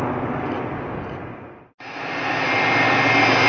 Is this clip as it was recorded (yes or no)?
yes